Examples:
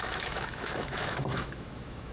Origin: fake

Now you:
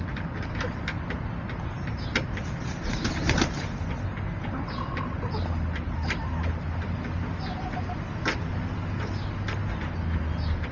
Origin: real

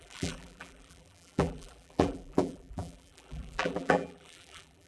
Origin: fake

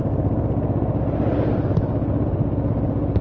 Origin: real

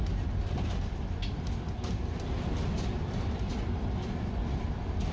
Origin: real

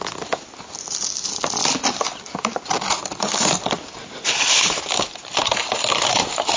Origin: real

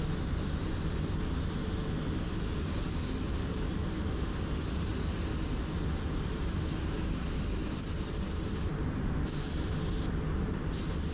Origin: real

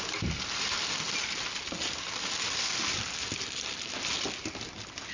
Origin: real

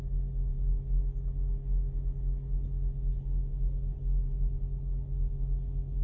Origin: real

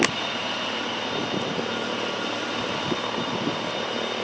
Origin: real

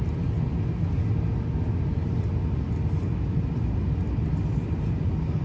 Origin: real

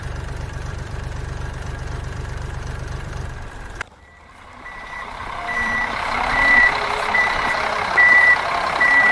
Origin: fake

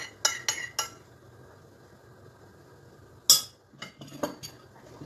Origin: real